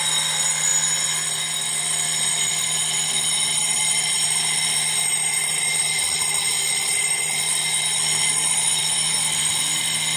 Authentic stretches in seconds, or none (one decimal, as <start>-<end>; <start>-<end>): 0.0-10.2